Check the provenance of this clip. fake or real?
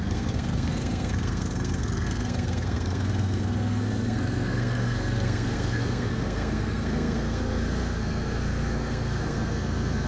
fake